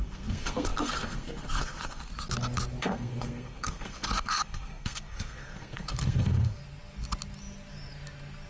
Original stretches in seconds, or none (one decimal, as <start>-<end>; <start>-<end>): 2.1-2.8; 6.6-8.5